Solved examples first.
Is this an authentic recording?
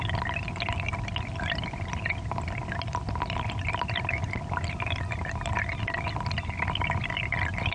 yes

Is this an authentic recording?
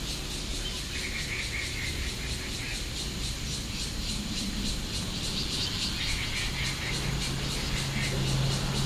yes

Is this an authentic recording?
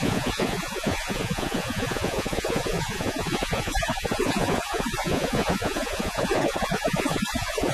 no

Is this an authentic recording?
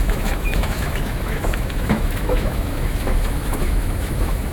no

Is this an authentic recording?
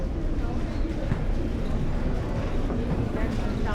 yes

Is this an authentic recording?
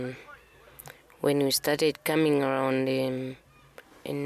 yes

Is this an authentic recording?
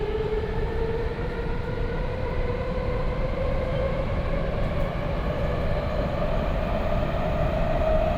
no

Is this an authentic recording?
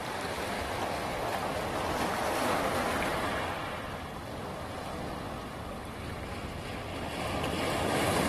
yes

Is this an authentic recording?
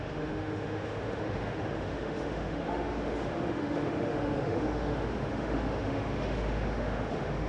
no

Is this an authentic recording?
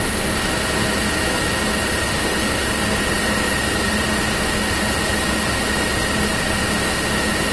yes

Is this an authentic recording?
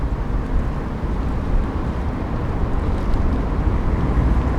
yes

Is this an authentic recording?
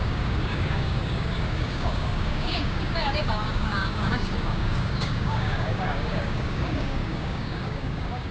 no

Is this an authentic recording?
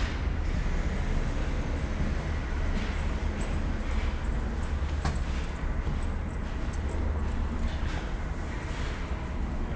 yes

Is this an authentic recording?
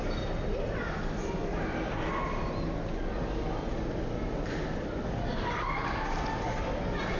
yes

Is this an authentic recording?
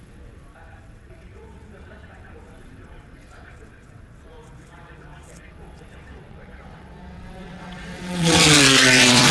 no